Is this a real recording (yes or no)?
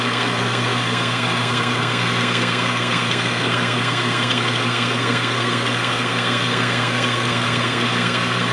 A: no